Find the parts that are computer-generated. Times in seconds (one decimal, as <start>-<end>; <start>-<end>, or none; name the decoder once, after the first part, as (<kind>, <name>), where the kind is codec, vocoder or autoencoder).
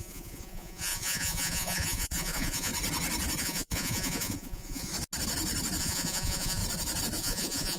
0.0-2.7 (vocoder, Vocos); 3.4-4.9; 5.8-6.6; 7.2-7.8